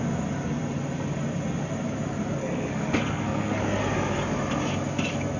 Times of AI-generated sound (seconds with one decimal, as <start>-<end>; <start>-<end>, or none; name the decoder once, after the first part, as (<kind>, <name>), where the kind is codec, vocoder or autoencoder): 2.4-3.6 (codec, SNAC)